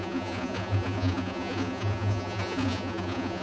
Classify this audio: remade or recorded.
remade